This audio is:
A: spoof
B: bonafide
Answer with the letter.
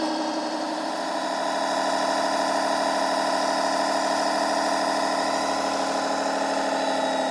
B